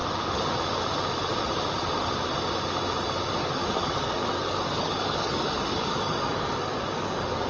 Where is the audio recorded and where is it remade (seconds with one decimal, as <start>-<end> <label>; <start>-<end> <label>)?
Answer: 0.0-3.4 recorded; 3.4-7.5 remade